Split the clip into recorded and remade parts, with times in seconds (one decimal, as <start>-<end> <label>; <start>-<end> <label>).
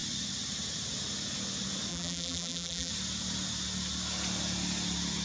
0.0-1.9 recorded; 1.9-2.9 remade; 2.9-5.2 recorded